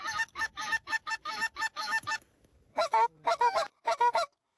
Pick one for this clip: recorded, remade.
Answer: remade